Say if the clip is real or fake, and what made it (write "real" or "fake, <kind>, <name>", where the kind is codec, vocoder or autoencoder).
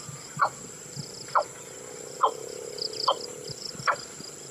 fake, vocoder, BigVGAN v2